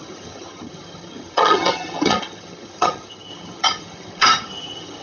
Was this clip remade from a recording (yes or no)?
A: yes